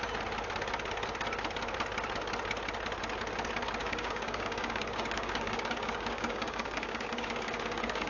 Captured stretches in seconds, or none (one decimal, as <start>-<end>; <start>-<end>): 0.0-3.8